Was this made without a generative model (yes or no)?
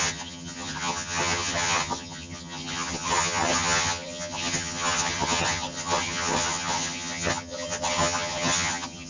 no